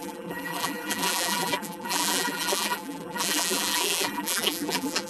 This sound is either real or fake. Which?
fake